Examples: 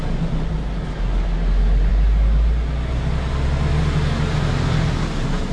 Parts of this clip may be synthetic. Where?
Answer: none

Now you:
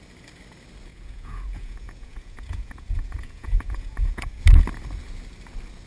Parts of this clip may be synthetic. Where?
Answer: 0.9-4.4 (vocoder, Vocos)

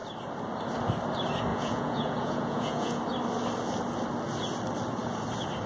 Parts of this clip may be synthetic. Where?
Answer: 1.5-3.0 (vocoder, Vocos)

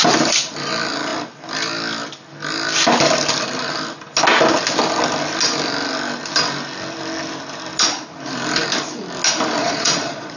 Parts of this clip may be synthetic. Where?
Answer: 9.6-10.4 (vocoder, Vocos)